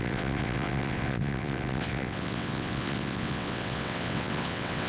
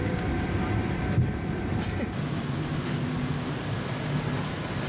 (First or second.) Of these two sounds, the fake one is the first